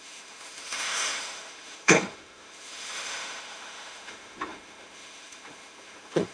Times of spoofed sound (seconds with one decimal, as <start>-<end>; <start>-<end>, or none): 0.0-6.3